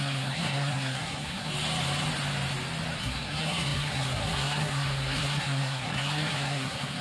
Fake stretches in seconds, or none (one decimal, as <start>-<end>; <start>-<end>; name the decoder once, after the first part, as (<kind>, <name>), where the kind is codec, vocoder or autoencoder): 0.0-1.5 (codec, SNAC); 3.0-7.0